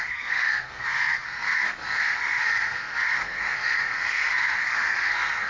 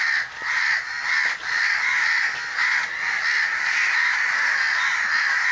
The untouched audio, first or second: second